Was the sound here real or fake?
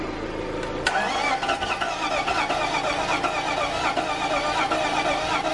real